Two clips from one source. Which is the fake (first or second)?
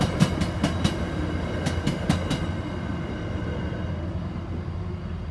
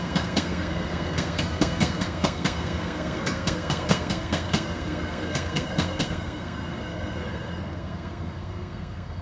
second